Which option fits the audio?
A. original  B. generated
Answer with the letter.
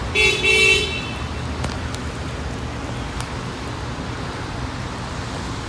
A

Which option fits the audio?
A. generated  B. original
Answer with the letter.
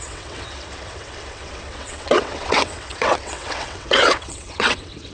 A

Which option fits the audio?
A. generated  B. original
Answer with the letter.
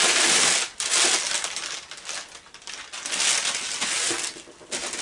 B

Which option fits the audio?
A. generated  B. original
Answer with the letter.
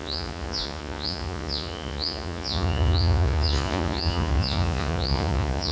A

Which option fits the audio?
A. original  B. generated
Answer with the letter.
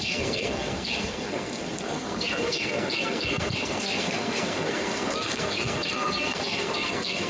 B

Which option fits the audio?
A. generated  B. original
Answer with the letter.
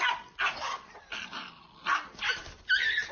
B